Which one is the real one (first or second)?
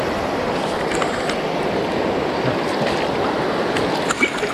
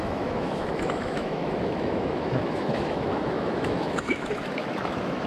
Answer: first